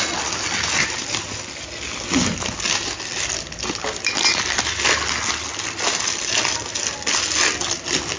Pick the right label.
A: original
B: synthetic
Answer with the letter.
A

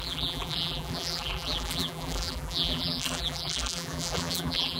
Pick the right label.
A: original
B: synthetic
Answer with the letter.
B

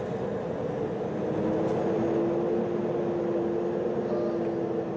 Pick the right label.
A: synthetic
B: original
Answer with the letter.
B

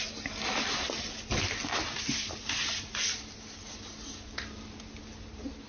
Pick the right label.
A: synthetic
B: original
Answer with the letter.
B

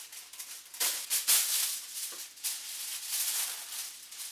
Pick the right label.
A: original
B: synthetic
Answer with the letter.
A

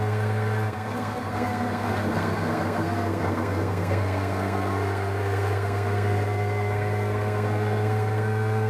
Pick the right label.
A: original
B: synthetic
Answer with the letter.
B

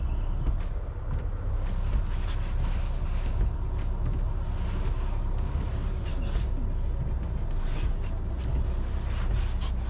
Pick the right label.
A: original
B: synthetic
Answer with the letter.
A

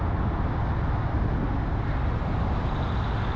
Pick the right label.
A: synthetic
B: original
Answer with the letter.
B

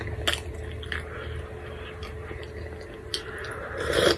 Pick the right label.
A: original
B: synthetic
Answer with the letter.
A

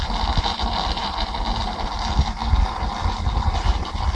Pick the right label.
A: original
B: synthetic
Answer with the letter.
A